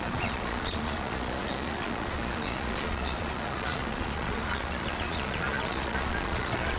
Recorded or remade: remade